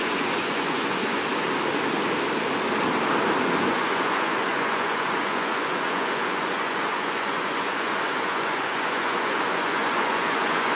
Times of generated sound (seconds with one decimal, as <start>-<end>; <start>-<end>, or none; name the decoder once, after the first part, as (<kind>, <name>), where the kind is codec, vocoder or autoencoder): 0.0-1.2 (vocoder, Vocos); 3.4-10.7